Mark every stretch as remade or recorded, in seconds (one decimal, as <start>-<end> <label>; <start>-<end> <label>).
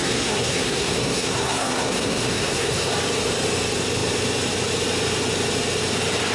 0.0-2.9 remade; 2.9-6.3 recorded